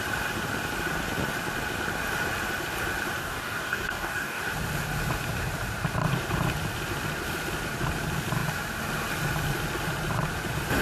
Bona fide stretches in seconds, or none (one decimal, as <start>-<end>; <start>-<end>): 0.0-3.2; 4.4-10.8